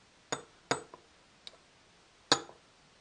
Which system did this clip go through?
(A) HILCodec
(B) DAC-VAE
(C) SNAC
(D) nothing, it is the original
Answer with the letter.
D